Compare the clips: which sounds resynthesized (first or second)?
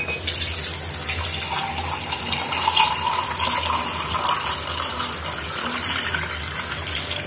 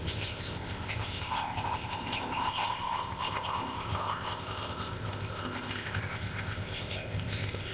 second